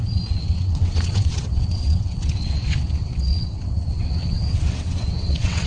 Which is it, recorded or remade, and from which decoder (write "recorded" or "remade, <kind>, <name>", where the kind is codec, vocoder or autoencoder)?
remade, vocoder, WaveNeXt